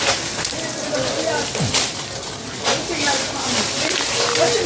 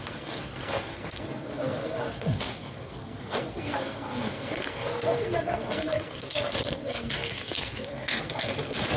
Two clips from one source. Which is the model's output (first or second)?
second